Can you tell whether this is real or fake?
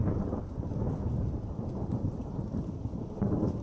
fake